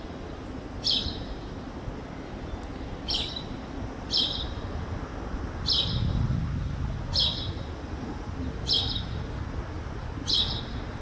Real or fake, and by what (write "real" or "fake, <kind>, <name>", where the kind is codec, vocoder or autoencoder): real